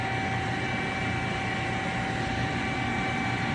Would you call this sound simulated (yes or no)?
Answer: no